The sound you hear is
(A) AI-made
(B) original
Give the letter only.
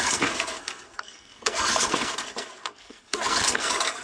A